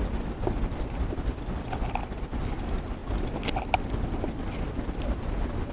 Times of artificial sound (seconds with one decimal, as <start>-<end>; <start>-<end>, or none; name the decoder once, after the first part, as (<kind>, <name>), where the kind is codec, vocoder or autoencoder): none